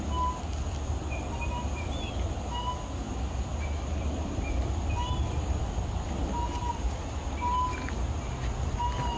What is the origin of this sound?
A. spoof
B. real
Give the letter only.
B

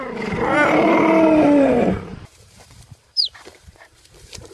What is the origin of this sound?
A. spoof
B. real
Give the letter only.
A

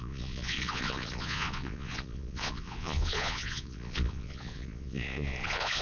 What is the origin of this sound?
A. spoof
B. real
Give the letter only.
A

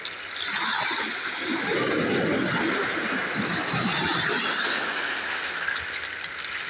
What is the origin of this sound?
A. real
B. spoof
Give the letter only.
A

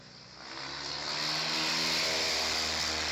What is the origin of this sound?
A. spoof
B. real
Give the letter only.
B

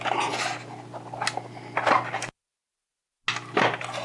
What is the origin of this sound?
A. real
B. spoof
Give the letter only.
A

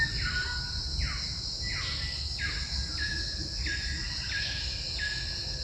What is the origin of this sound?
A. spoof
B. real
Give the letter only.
B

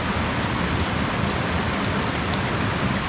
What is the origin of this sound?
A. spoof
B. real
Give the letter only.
B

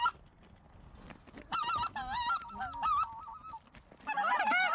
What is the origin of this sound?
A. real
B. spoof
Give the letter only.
A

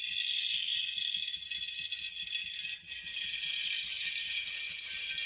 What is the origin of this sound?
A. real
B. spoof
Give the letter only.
A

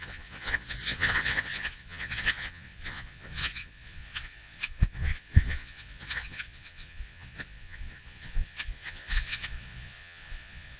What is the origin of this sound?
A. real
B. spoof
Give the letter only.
B